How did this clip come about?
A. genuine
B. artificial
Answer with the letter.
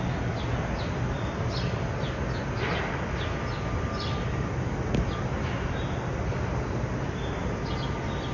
A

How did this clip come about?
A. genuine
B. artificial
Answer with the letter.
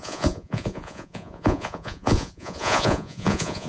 B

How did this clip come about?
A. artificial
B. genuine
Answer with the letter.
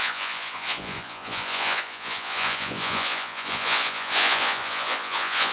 A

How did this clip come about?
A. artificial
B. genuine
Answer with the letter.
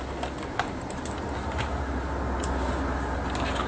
B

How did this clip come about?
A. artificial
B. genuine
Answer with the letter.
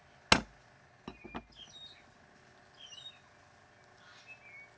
B